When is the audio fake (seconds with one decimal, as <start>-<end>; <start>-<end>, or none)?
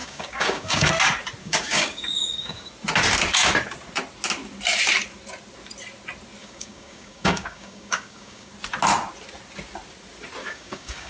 0.0-0.9; 1.4-2.7; 6.4-8.5; 10.4-11.1